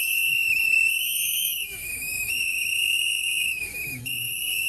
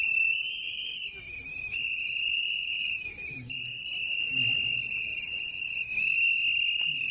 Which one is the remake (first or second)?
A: first